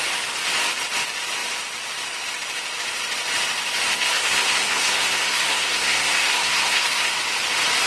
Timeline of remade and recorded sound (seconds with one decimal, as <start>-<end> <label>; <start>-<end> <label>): 0.0-3.9 recorded; 3.9-7.1 remade; 7.1-7.9 recorded